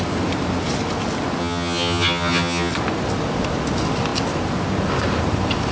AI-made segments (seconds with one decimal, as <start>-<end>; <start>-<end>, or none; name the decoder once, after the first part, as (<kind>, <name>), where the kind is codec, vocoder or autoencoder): 1.4-2.7 (vocoder, HiFi-GAN)